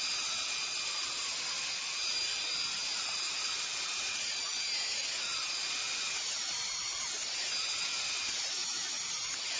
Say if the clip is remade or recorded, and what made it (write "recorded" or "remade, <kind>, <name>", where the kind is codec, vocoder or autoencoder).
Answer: recorded